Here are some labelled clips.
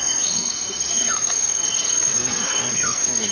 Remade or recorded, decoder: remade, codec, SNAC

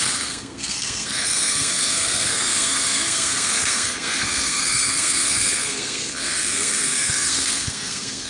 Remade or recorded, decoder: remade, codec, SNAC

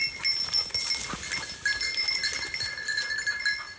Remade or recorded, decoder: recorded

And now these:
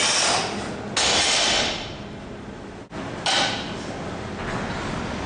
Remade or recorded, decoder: recorded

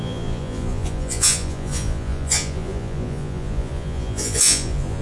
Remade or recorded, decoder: remade, vocoder, Vocos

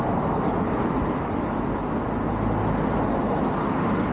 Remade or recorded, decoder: recorded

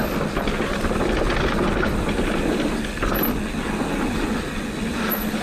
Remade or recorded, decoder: recorded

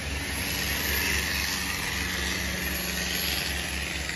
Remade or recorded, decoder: recorded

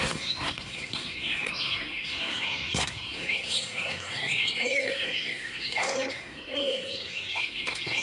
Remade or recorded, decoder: remade, codec, SNAC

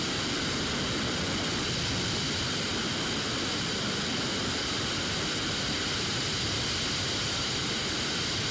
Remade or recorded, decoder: recorded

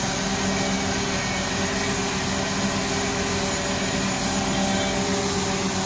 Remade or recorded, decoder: recorded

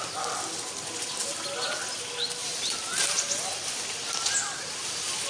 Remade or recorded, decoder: recorded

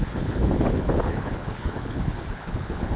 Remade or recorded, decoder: remade, codec, HILCodec